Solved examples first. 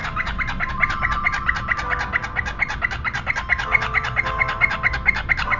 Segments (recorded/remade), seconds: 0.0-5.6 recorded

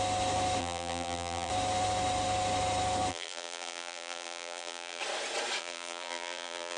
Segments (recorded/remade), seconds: 0.0-0.6 recorded; 0.6-1.5 remade; 1.5-3.1 recorded; 3.1-5.0 remade; 5.0-5.6 recorded; 5.6-6.8 remade

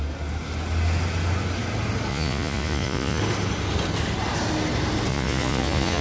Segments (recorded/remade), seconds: 0.0-2.1 recorded; 2.1-3.2 remade; 3.2-5.1 recorded; 5.1-6.0 remade

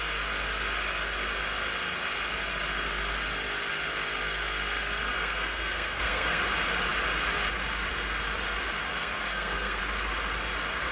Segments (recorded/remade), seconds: 0.0-5.1 recorded; 5.1-6.4 remade; 6.4-8.9 recorded; 8.9-9.8 remade; 9.8-10.9 recorded

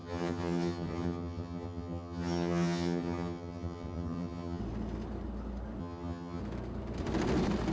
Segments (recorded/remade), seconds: 0.0-4.6 remade; 4.6-5.8 recorded; 5.8-6.4 remade; 6.4-7.7 recorded

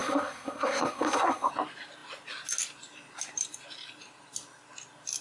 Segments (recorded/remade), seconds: 0.0-1.5 remade; 1.5-5.2 recorded

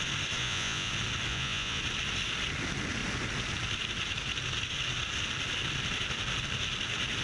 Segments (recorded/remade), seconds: 0.0-0.4 recorded; 0.4-0.9 remade; 0.9-1.3 recorded; 1.3-1.8 remade; 1.8-7.2 recorded

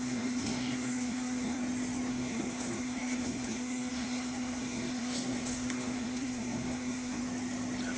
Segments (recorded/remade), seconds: 0.0-1.6 remade; 1.6-2.1 recorded; 2.1-7.2 remade; 7.2-8.0 recorded